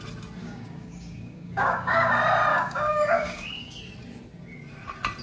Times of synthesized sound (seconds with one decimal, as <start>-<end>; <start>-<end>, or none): 0.4-2.1; 2.5-3.8